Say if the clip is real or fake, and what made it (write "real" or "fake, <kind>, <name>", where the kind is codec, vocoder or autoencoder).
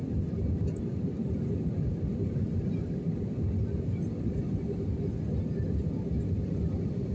real